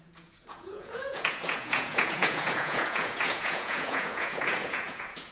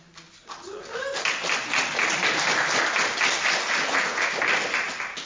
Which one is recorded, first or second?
second